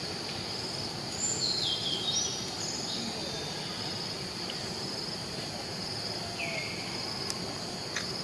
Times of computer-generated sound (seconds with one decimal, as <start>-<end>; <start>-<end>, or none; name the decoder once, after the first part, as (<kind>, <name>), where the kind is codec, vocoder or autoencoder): 1.8-2.5 (vocoder, BigVGAN v2); 3.2-7.1